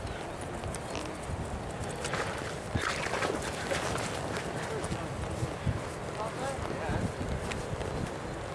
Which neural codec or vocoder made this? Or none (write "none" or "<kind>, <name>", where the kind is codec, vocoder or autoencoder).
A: none